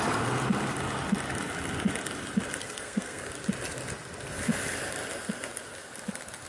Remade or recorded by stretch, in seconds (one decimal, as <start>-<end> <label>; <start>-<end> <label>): 0.0-2.6 recorded; 2.6-3.3 remade; 3.3-6.5 recorded